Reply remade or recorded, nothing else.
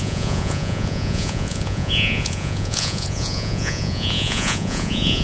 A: remade